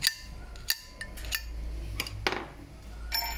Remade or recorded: recorded